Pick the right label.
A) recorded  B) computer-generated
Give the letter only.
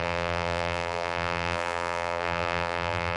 B